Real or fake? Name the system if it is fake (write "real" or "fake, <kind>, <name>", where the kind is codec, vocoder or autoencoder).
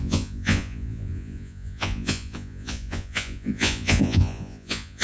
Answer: fake, vocoder, Vocos